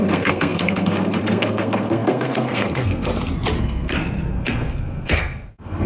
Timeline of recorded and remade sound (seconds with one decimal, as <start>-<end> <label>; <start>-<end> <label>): 0.0-3.1 remade; 3.1-3.6 recorded; 3.6-5.9 remade